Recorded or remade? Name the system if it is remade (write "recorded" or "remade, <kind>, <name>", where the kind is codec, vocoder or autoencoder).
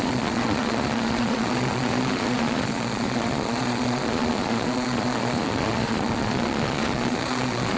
remade, vocoder, Vocos